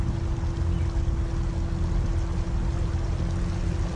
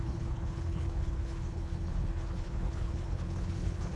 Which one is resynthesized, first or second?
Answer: second